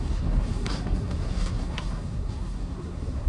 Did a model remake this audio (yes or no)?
yes